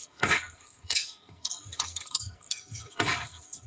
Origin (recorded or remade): remade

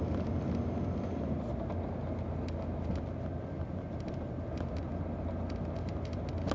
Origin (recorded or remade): recorded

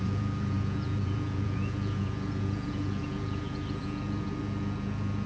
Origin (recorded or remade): remade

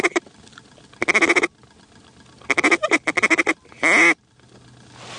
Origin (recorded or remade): recorded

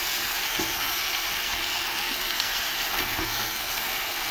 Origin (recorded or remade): remade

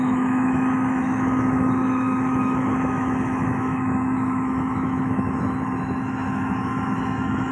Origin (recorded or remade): remade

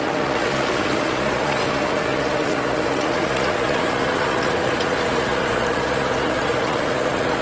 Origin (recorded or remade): remade